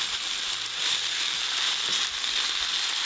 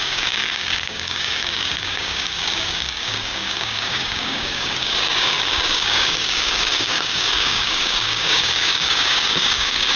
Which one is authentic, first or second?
first